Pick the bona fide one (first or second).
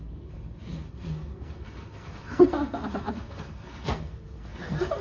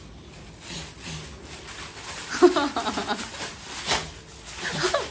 second